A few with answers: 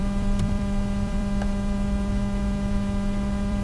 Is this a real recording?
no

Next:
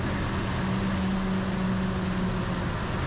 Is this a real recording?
yes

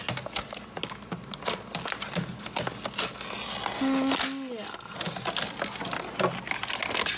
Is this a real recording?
yes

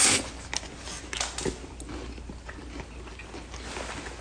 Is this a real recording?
yes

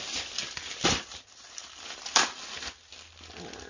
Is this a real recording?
yes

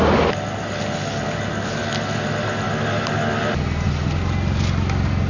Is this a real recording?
yes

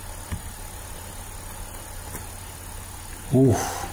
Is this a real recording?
yes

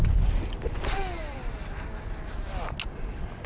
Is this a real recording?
yes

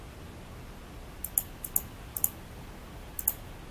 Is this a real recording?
yes